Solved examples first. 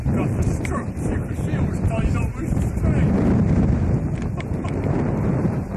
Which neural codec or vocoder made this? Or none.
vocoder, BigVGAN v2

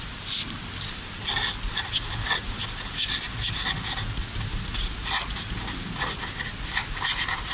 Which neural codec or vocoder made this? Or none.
none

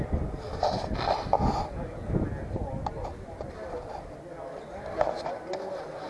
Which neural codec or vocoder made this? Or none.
none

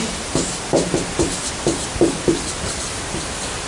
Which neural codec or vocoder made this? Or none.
none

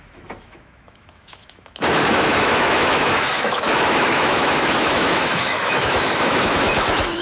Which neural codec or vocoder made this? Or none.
autoencoder, DAC-VAE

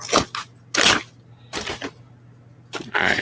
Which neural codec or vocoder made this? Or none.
none